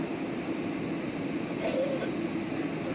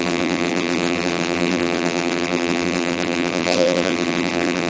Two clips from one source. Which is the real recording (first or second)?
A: first